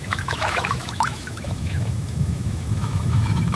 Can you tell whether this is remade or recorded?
remade